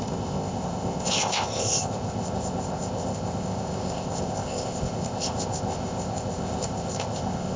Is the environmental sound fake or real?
fake